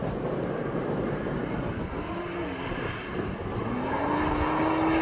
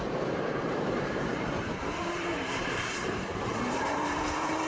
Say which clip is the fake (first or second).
second